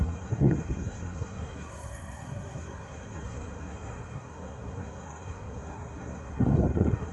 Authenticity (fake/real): fake